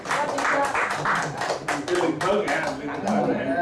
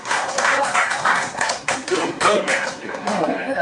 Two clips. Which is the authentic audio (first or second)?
first